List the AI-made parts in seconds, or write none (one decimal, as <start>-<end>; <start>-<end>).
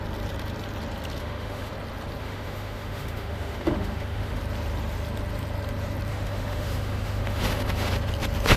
1.2-1.7; 2.2-4.4; 6.1-7.9